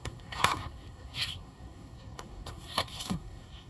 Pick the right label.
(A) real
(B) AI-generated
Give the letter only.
B